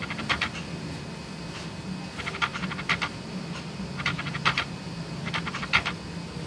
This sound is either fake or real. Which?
real